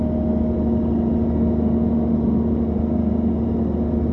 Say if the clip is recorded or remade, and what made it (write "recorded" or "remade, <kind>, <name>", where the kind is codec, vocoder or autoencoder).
recorded